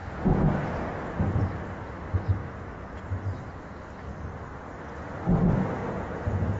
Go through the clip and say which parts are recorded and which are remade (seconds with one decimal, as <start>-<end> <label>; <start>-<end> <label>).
0.0-0.5 remade; 0.5-5.8 recorded; 5.8-6.6 remade